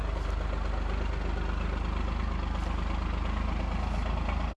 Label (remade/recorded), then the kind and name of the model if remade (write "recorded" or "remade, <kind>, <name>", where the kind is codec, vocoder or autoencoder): recorded